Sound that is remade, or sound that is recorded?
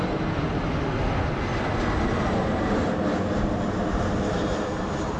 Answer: recorded